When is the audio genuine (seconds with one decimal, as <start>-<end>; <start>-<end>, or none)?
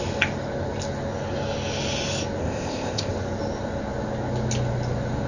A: 0.0-2.4; 3.1-5.3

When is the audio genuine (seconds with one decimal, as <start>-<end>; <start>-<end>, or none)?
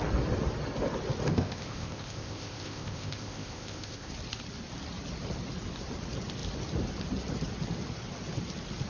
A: 0.0-1.3; 4.1-8.9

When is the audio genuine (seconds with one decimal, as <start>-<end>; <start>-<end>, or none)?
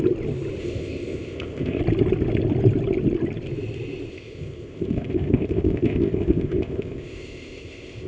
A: 0.0-0.6; 1.8-4.1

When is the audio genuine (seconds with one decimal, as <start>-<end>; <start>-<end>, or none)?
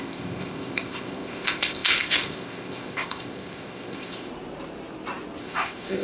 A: 4.3-5.4